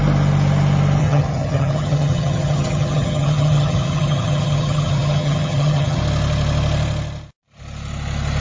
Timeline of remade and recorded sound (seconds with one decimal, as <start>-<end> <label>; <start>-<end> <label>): 0.0-1.0 recorded; 1.0-6.0 remade; 6.0-8.4 recorded